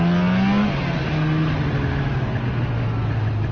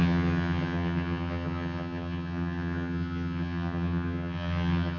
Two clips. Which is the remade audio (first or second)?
second